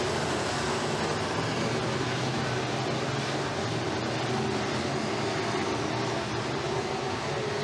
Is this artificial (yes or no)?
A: no